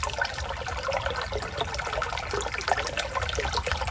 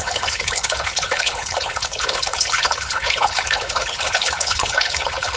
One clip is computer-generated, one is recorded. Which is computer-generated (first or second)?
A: second